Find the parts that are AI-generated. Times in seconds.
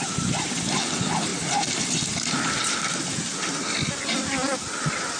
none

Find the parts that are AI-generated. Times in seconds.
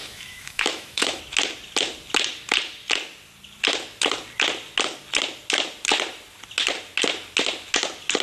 0.0-1.2 (autoencoder, DAC-VAE)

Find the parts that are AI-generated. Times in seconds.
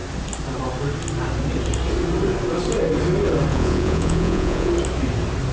3.5-4.7 (vocoder, Vocos)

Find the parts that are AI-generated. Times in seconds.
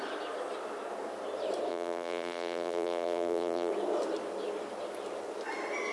1.7-3.7 (vocoder, BigVGAN v2)